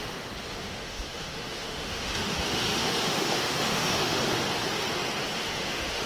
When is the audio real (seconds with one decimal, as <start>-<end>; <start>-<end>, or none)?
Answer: 0.0-0.5; 4.2-5.4